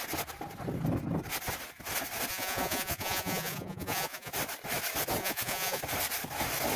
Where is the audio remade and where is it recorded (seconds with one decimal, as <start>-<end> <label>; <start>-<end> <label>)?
0.0-2.3 recorded; 2.3-4.3 remade; 4.3-5.2 recorded; 5.2-5.8 remade; 5.8-6.8 recorded

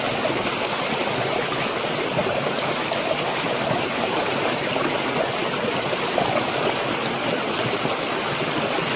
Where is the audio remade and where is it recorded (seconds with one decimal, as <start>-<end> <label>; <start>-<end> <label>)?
0.0-2.2 recorded; 2.2-4.7 remade; 4.7-9.0 recorded

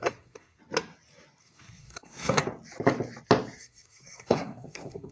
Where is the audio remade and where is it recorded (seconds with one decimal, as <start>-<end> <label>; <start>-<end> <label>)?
0.0-0.6 remade; 0.6-1.4 recorded; 1.4-2.4 remade; 2.4-3.6 recorded; 3.6-5.1 remade

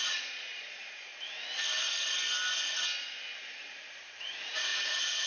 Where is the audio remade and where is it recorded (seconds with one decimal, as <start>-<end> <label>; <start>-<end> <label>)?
0.0-1.1 remade; 1.1-3.4 recorded; 3.4-5.3 remade

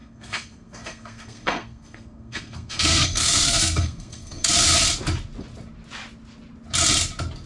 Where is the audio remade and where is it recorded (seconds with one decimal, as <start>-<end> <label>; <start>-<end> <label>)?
0.0-4.5 remade; 4.5-7.5 recorded